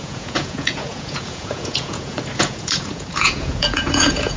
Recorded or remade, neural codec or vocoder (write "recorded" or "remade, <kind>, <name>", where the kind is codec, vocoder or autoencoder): remade, vocoder, Vocos